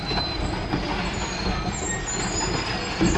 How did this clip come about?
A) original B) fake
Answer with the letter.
A